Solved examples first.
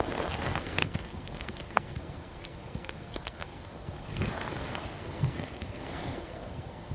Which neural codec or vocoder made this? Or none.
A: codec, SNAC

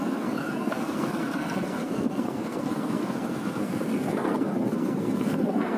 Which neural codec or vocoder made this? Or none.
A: codec, SNAC